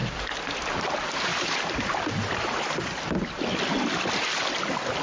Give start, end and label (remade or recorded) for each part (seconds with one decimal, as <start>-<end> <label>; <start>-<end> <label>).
0.0-1.3 recorded; 1.3-3.0 remade; 3.0-5.0 recorded